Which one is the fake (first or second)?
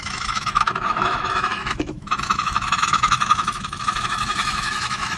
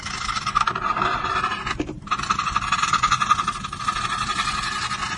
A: first